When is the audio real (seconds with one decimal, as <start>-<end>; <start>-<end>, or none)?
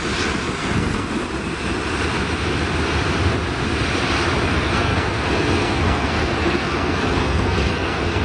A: 0.0-0.6; 1.1-4.5